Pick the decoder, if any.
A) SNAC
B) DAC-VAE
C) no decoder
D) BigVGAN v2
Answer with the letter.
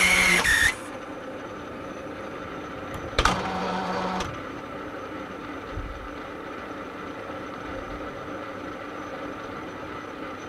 D